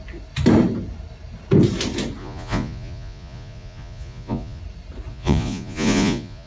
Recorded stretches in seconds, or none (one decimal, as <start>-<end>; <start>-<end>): 0.0-2.2; 4.6-5.1